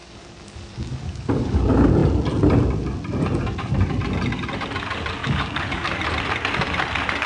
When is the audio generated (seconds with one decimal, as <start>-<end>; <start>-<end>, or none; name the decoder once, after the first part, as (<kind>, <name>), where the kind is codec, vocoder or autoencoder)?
0.0-1.6 (codec, DAC); 5.2-6.0